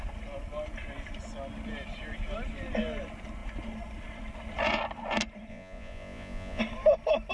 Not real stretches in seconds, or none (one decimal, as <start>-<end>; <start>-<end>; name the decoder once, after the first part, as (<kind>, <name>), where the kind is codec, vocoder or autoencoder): 5.5-6.6 (vocoder, Vocos)